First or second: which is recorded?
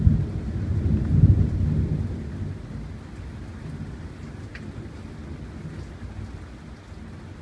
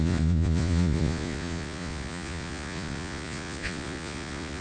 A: first